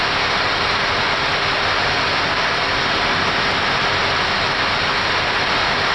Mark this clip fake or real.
real